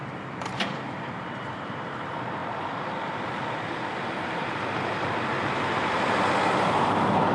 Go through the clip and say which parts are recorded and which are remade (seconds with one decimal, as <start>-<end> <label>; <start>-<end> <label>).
0.0-7.3 remade